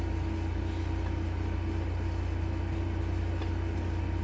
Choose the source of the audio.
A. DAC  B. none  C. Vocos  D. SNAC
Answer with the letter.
B